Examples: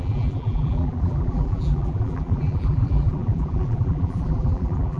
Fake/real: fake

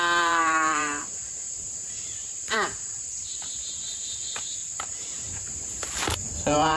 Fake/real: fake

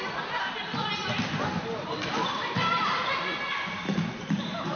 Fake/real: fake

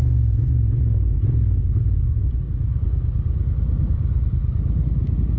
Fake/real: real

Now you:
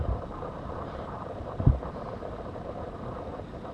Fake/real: fake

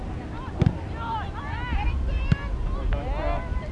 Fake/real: real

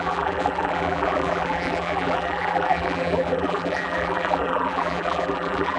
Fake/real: fake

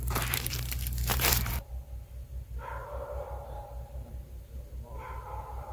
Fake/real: fake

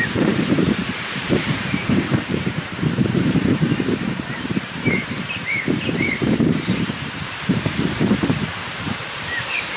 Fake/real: fake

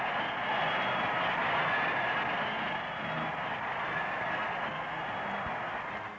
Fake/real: real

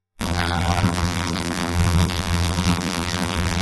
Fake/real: fake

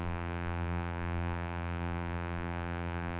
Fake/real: fake